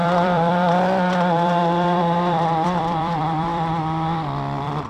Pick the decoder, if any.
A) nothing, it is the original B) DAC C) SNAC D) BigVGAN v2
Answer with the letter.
D